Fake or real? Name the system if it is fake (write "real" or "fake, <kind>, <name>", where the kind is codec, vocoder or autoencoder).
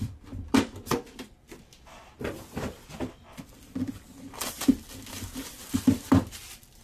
fake, vocoder, BigVGAN v2